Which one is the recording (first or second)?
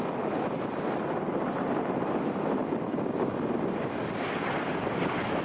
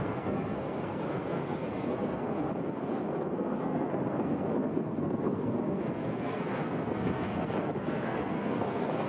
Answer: first